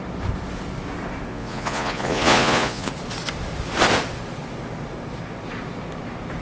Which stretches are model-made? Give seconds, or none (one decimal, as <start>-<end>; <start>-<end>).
1.3-2.9

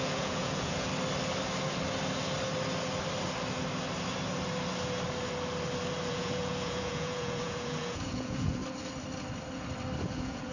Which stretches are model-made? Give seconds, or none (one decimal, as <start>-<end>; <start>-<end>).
0.0-0.9; 6.1-8.6; 10.0-10.5

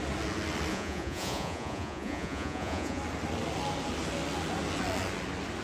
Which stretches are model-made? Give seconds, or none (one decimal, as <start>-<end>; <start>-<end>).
0.7-3.0

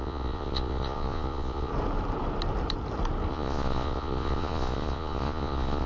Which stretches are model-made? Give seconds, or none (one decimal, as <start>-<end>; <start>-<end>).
0.0-1.7; 3.3-5.9